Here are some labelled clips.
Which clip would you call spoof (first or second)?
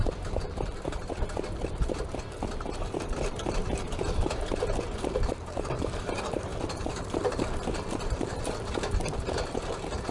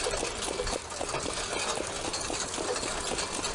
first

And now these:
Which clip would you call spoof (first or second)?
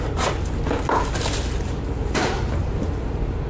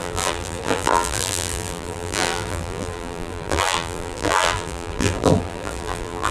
second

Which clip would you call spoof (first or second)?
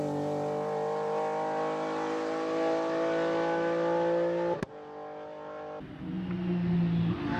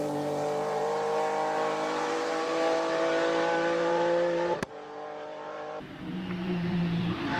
second